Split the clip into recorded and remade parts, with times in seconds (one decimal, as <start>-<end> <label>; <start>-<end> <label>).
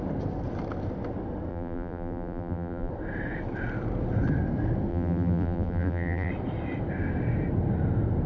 0.0-1.5 recorded; 1.5-2.9 remade; 2.9-4.9 recorded; 4.9-6.3 remade; 6.3-8.3 recorded